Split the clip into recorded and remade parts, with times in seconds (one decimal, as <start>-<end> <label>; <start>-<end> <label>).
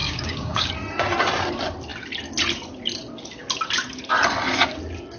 0.0-0.7 remade; 0.7-5.2 recorded